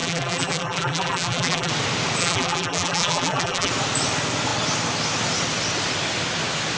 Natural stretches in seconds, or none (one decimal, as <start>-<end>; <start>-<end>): 1.7-2.2; 3.7-6.8